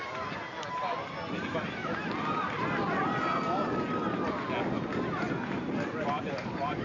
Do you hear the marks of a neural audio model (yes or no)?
no